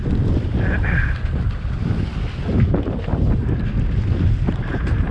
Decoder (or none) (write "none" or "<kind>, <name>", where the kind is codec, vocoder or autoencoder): none